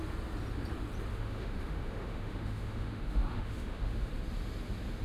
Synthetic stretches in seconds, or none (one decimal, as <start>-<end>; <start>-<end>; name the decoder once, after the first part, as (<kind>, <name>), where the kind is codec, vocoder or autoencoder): 1.1-4.1 (autoencoder, DAC-VAE)